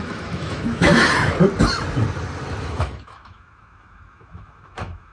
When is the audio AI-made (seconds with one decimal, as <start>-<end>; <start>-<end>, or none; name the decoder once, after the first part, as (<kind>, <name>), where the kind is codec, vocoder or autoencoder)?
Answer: 0.0-0.9 (autoencoder, DAC-VAE); 2.6-5.1